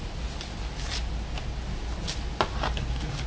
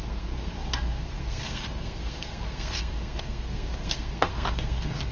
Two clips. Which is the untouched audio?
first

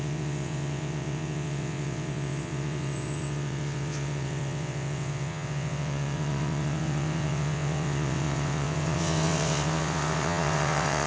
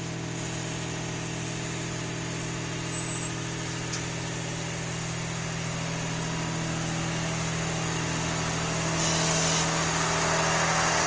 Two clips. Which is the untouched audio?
second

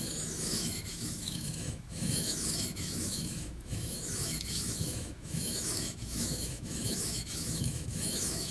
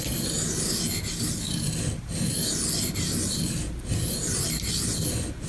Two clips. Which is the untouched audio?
second